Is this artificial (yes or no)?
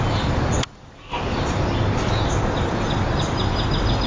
no